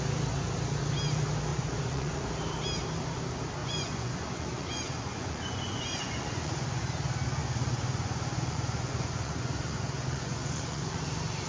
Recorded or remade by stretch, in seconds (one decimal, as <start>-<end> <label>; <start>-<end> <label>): 0.0-1.5 recorded; 1.5-2.3 remade; 2.3-3.6 recorded; 3.6-6.8 remade; 6.8-7.4 recorded; 7.4-11.0 remade; 11.0-11.5 recorded

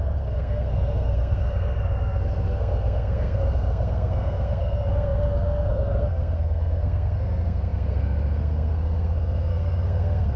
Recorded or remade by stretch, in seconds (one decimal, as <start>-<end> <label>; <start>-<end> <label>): 0.0-10.4 remade

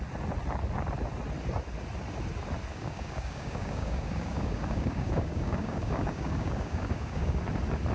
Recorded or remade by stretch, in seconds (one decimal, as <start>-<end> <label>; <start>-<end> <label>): 0.0-2.7 recorded; 2.7-7.4 remade; 7.4-7.9 recorded

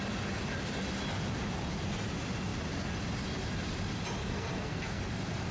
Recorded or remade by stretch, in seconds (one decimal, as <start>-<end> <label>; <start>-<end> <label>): 0.0-4.2 recorded; 4.2-5.0 remade; 5.0-5.5 recorded

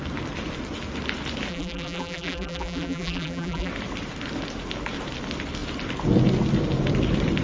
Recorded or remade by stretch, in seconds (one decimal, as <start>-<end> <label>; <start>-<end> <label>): 0.0-1.5 recorded; 1.5-3.7 remade; 3.7-7.4 recorded

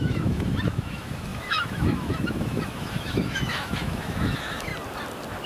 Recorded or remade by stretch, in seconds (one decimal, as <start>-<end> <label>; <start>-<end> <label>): 0.0-4.7 remade; 4.7-5.5 recorded

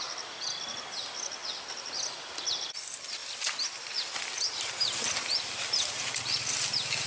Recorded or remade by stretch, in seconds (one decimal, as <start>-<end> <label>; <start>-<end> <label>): 0.0-7.1 recorded